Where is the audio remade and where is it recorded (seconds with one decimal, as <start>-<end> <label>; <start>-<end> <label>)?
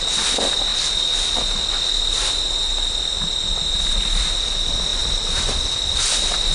0.0-6.5 recorded